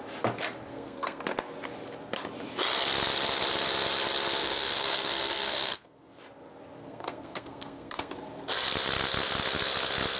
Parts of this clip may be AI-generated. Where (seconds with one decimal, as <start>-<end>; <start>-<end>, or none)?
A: 0.7-1.2; 4.4-6.2; 6.8-8.1